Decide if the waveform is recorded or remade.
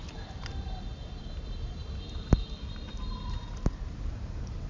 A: recorded